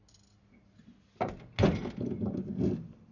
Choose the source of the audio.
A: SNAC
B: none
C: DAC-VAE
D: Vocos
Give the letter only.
B